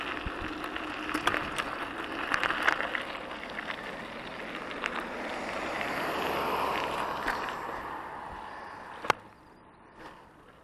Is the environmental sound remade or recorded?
recorded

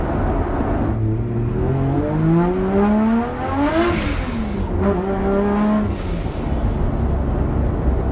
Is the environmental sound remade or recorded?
recorded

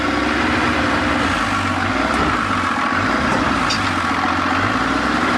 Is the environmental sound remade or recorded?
recorded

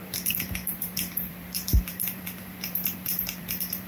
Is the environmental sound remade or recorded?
remade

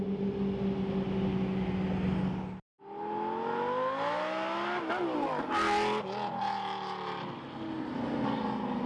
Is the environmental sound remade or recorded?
recorded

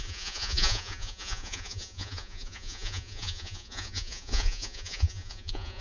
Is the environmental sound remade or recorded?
remade